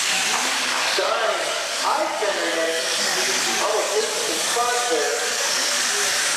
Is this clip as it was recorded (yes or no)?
no